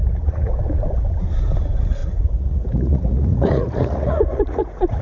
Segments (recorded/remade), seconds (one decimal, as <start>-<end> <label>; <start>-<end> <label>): 0.0-0.5 remade; 0.5-2.0 recorded; 2.0-5.0 remade